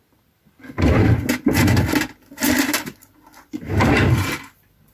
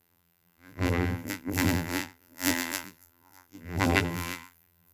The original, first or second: first